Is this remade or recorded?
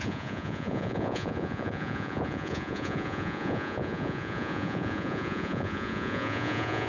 remade